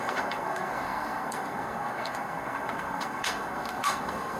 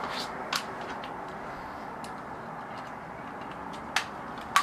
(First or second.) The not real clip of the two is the first